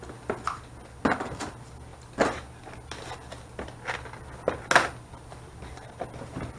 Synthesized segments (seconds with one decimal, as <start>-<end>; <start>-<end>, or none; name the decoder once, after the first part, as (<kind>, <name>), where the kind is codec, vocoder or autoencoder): none